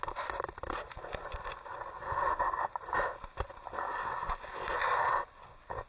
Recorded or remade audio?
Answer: recorded